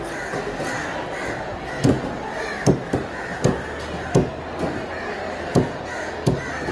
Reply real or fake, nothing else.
real